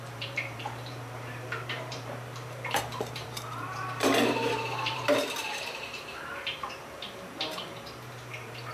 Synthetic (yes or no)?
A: yes